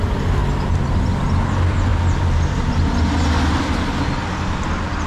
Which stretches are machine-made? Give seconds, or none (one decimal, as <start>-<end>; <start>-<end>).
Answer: none